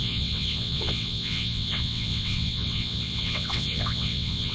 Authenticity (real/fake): fake